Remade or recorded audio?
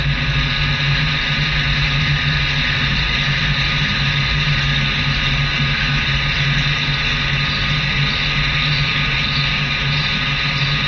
recorded